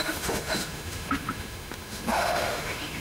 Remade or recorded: remade